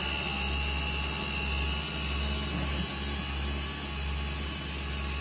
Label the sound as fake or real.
real